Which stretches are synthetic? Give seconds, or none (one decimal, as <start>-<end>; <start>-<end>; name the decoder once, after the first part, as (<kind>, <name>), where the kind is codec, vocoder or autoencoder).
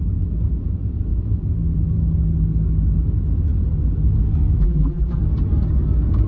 4.6-5.2 (vocoder, BigVGAN v2)